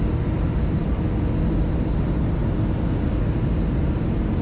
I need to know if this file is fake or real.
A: real